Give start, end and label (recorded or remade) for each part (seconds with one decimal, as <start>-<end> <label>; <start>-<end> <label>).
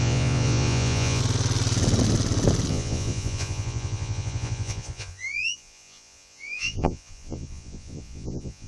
0.0-1.2 remade; 1.2-2.7 recorded; 2.7-8.7 remade